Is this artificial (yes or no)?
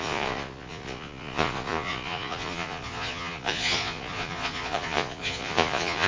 yes